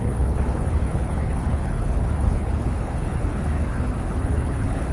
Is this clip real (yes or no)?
no